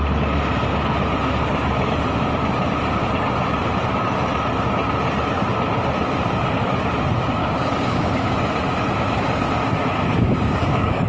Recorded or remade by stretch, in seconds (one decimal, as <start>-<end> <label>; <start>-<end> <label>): 0.0-7.4 recorded; 7.4-8.1 remade; 8.1-10.1 recorded; 10.1-11.1 remade